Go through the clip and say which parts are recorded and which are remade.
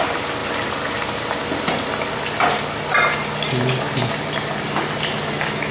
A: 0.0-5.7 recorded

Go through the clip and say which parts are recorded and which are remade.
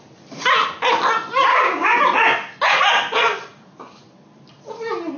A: 0.0-1.5 recorded; 1.5-2.0 remade; 2.0-5.2 recorded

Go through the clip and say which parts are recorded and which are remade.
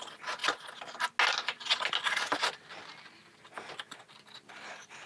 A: 0.0-5.1 recorded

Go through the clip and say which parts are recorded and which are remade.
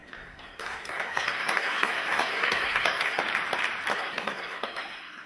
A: 0.0-3.2 remade; 3.2-3.9 recorded; 3.9-5.3 remade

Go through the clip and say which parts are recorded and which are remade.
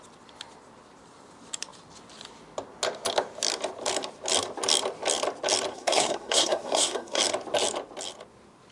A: 0.0-5.7 recorded; 5.7-7.2 remade; 7.2-8.7 recorded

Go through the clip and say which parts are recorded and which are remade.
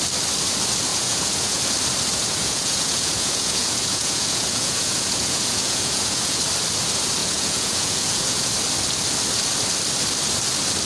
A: 0.0-0.9 recorded; 0.9-1.6 remade; 1.6-2.1 recorded; 2.1-6.4 remade; 6.4-7.2 recorded; 7.2-8.5 remade; 8.5-10.9 recorded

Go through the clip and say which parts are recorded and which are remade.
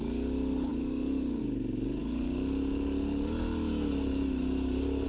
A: 0.0-5.1 recorded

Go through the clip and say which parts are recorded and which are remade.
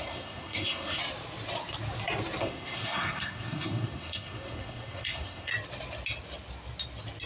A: 0.0-1.0 remade; 1.0-2.4 recorded; 2.4-5.5 remade; 5.5-7.3 recorded